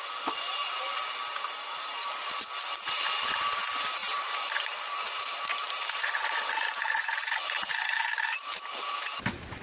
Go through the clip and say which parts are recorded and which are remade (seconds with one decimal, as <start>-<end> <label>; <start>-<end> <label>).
0.0-4.0 recorded; 4.0-9.2 remade; 9.2-9.6 recorded